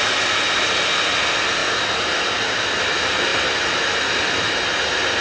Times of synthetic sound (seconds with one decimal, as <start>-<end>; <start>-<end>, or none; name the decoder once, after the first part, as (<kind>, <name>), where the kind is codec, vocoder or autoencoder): none